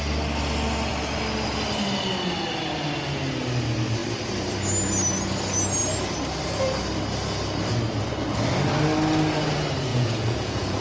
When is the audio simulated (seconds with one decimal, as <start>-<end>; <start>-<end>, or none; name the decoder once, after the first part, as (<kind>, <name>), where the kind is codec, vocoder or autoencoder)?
9.9-10.8 (vocoder, Vocos)